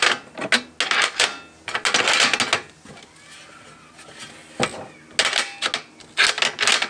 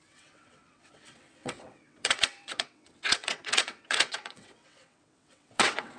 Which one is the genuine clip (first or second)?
first